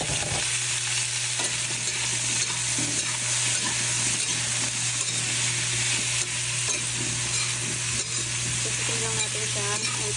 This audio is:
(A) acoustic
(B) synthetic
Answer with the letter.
A